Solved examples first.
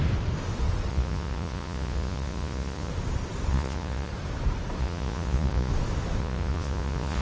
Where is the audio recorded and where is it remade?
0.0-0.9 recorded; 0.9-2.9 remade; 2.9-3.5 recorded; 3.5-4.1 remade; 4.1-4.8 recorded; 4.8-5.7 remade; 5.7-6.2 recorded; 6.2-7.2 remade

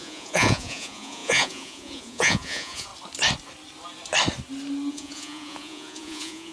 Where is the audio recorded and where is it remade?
0.0-2.9 remade; 2.9-4.9 recorded; 4.9-6.5 remade

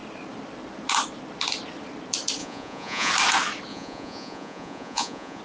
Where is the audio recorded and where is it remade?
0.0-2.4 recorded; 2.4-3.1 remade; 3.1-3.7 recorded; 3.7-5.4 remade

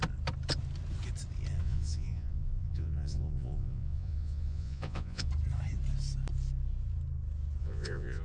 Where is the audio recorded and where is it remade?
0.0-1.6 recorded; 1.6-5.3 remade; 5.3-7.6 recorded; 7.6-8.2 remade